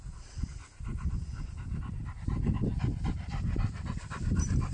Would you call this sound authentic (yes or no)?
yes